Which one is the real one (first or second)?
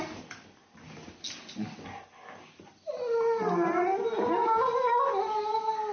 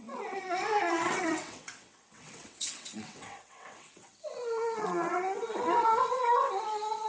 first